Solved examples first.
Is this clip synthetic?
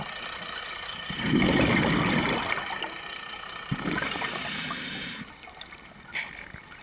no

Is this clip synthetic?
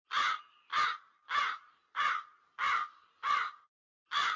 yes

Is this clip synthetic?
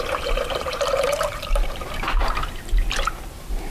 yes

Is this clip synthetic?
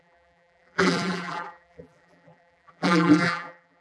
yes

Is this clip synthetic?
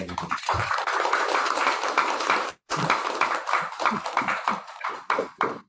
yes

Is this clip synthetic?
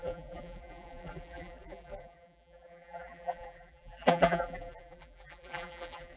yes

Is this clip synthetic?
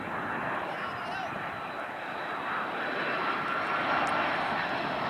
no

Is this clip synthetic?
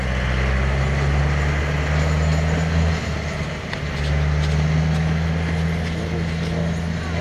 no